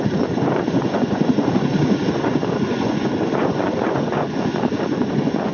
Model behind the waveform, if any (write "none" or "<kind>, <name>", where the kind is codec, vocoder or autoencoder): vocoder, Vocos